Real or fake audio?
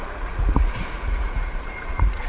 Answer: fake